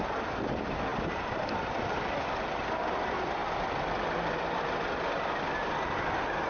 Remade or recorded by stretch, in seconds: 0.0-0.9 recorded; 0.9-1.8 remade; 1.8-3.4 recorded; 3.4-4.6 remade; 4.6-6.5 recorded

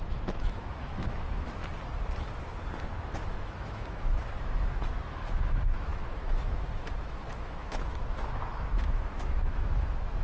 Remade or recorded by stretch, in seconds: 0.0-1.6 remade; 1.6-3.0 recorded; 3.0-10.2 remade

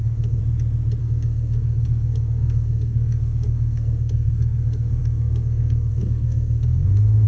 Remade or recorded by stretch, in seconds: 0.0-0.4 remade; 0.4-1.0 recorded; 1.0-7.3 remade

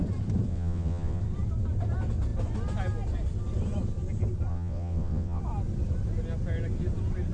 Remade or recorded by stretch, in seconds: 0.0-0.5 recorded; 0.5-1.2 remade; 1.2-4.5 recorded; 4.5-5.4 remade; 5.4-7.3 recorded

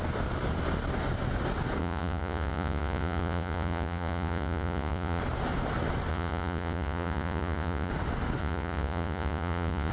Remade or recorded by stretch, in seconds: 0.0-1.8 recorded; 1.8-5.2 remade; 5.2-6.1 recorded; 6.1-7.9 remade; 7.9-8.4 recorded; 8.4-9.9 remade

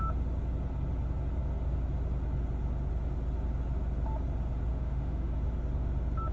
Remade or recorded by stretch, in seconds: 0.0-4.7 recorded; 4.7-5.3 remade; 5.3-6.3 recorded

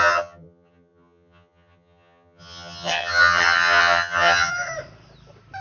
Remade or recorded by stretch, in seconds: 0.0-4.5 remade; 4.5-5.6 recorded

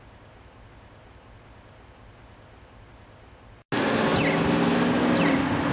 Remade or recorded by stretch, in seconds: 0.0-5.7 recorded